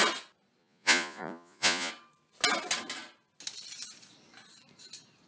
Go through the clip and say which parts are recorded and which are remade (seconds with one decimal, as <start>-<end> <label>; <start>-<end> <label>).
0.0-0.6 recorded; 0.6-1.9 remade; 1.9-5.3 recorded